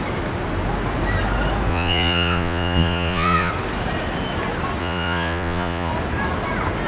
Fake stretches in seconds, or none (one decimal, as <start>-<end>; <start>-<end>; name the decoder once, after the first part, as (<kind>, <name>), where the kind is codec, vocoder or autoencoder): 1.7-3.5 (vocoder, Vocos); 4.8-5.9